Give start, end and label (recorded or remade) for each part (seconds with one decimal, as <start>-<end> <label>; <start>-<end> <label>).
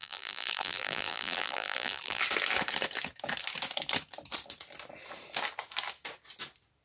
0.0-2.2 remade; 2.2-6.8 recorded